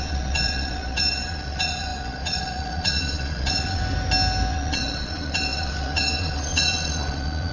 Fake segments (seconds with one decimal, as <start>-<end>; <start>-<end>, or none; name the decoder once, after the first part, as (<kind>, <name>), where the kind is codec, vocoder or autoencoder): 0.0-3.8 (vocoder, Vocos); 4.5-7.5